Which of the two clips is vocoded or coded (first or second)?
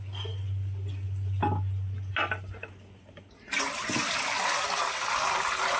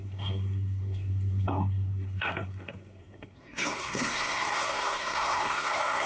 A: second